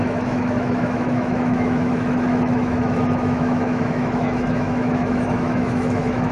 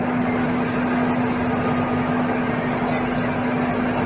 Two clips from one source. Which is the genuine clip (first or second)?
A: second